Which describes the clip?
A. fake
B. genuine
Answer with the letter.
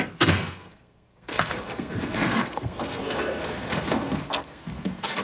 A